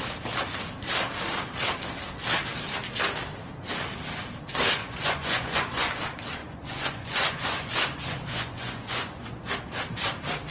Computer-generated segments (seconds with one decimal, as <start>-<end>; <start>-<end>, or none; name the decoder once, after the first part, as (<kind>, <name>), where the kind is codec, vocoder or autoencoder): 4.8-5.9 (vocoder, Vocos); 6.4-9.5